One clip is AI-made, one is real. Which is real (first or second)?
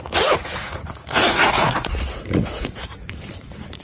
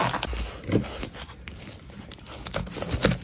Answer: second